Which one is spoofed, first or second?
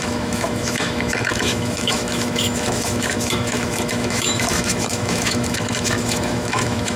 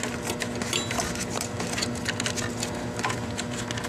first